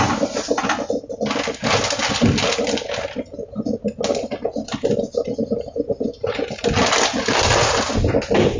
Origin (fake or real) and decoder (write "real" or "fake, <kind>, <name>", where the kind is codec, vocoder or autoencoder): real